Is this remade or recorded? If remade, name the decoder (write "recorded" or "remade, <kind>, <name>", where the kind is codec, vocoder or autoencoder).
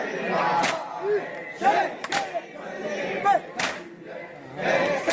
recorded